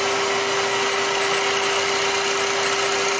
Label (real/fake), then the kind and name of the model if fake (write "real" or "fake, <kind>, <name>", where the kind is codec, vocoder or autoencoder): real